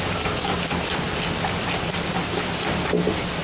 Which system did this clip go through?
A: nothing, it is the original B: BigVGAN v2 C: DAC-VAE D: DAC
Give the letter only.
A